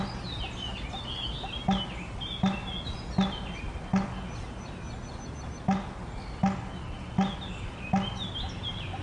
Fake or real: real